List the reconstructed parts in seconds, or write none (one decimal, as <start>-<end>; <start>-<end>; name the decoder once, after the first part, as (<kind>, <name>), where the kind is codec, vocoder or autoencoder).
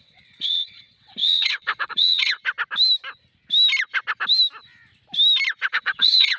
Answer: 0.0-2.4 (vocoder, WaveNeXt); 5.7-6.4